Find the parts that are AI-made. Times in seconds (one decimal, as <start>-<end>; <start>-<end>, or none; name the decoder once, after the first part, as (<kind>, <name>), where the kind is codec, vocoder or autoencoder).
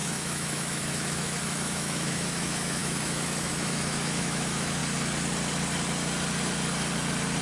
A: 0.0-4.8 (autoencoder, DAC-VAE)